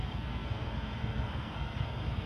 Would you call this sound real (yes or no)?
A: no